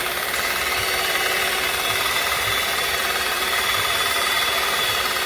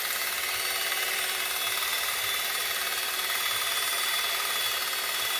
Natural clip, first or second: second